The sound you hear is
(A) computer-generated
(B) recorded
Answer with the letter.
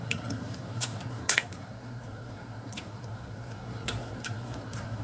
A